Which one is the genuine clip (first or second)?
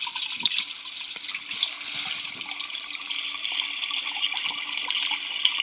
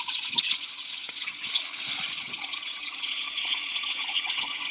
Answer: first